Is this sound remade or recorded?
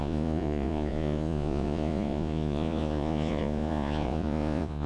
remade